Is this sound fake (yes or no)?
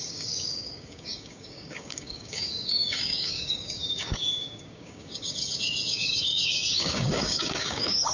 yes